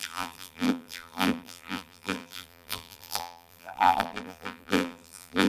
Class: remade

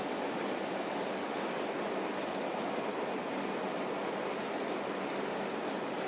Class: recorded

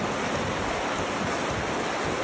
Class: remade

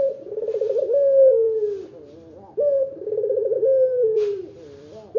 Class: remade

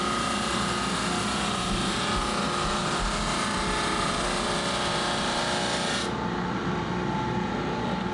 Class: recorded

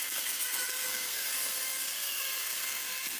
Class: remade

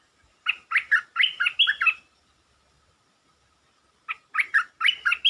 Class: recorded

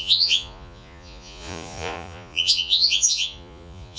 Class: remade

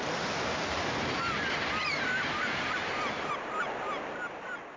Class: recorded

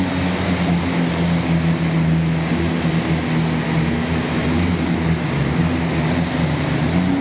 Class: recorded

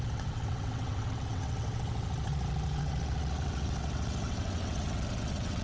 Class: remade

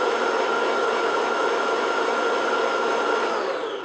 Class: recorded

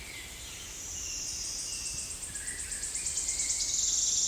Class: recorded